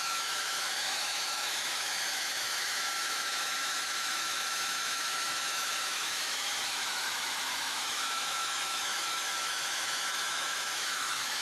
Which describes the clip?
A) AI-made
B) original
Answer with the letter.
A